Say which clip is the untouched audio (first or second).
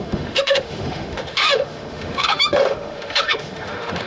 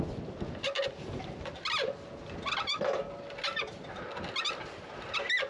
second